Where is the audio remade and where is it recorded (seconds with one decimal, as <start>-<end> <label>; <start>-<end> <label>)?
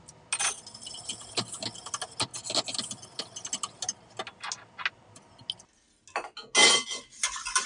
0.0-7.7 recorded